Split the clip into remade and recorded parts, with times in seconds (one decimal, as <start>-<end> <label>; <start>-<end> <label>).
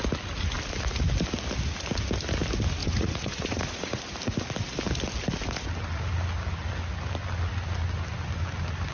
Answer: 0.0-2.8 recorded; 2.8-4.0 remade; 4.0-8.9 recorded